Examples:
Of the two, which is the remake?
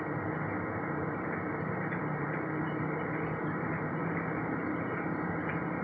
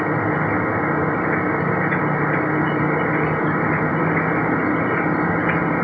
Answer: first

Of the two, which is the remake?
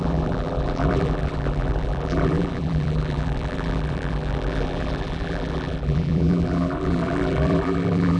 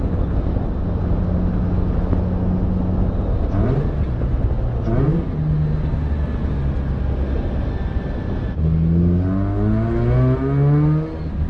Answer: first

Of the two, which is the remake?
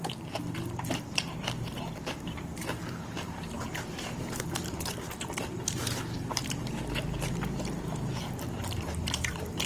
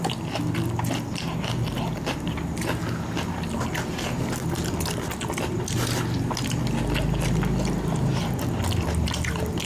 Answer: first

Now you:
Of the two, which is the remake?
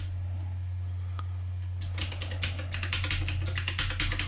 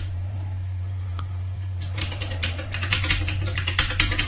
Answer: second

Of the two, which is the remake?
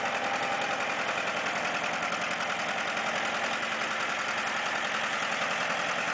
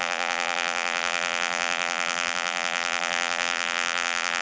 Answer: second